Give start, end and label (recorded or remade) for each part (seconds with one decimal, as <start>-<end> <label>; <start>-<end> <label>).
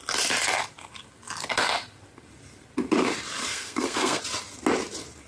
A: 0.0-3.4 recorded; 3.4-4.2 remade; 4.2-5.3 recorded